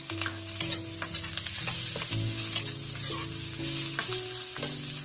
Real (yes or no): yes